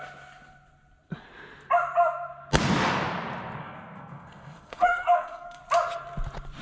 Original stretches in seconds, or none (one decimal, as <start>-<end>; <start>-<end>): 0.0-3.6; 5.6-6.6